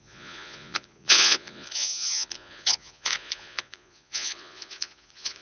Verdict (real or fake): fake